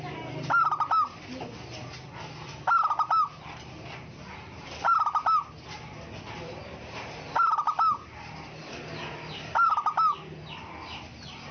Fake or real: real